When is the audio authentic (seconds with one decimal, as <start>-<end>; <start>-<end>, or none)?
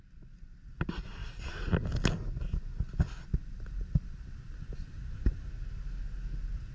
0.0-3.3; 5.5-6.7